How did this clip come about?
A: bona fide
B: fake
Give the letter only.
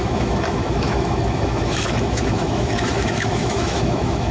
B